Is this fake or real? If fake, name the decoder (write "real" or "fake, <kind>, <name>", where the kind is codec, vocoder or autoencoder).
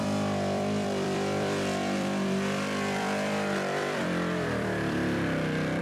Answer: fake, vocoder, BigVGAN v2